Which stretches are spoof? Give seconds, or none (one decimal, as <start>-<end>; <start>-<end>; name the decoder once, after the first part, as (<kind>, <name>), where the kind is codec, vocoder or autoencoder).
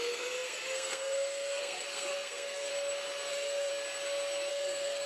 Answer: 0.0-2.7 (codec, SNAC); 3.3-3.7; 4.5-5.1